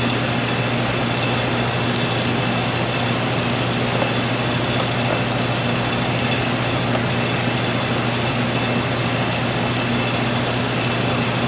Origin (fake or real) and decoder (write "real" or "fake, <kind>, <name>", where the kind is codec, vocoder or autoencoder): real